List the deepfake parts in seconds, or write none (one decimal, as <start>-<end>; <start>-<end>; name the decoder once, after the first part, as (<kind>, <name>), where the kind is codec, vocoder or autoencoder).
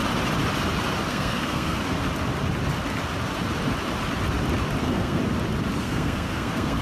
1.1-1.8 (codec, SNAC); 4.8-5.2; 5.8-6.8